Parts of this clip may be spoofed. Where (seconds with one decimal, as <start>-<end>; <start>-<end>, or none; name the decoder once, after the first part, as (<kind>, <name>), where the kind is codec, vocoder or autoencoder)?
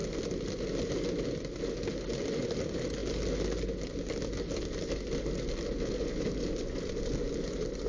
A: none